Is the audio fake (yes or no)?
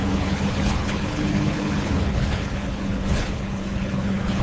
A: yes